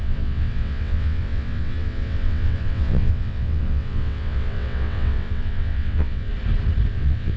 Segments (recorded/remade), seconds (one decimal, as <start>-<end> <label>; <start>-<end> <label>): 0.0-6.3 remade; 6.3-6.9 recorded; 6.9-7.4 remade